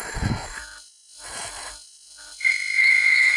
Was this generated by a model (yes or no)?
yes